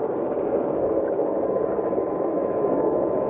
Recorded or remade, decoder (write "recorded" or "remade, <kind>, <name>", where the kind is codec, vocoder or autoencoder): remade, codec, DAC